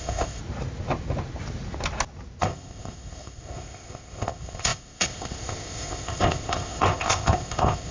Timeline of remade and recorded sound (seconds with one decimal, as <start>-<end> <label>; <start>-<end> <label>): 0.0-0.4 remade; 0.4-2.4 recorded; 2.4-7.9 remade